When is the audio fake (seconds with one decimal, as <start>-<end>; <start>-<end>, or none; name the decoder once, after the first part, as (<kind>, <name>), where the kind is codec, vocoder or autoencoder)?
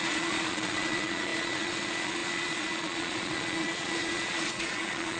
0.0-5.2 (vocoder, Vocos)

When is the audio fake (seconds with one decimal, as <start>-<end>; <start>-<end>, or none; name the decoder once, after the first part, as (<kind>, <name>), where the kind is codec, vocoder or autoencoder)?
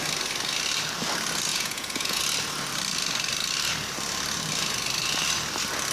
1.5-2.2 (vocoder, Vocos)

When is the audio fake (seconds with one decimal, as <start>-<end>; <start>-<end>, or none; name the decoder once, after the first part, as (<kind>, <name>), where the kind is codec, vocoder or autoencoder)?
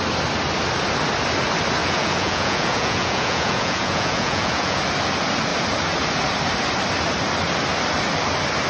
1.8-4.8 (vocoder, Vocos)